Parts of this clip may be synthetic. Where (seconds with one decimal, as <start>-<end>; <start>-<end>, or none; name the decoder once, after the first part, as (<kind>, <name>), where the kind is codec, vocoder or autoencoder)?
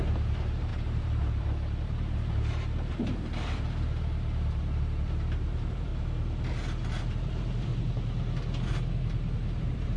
0.0-5.9 (vocoder, BigVGAN v2); 7.0-7.7; 9.6-10.0